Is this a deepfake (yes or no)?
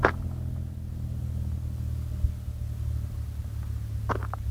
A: no